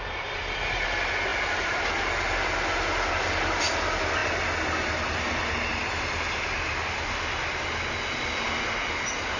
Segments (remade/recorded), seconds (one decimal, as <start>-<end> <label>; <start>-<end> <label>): 0.0-9.4 recorded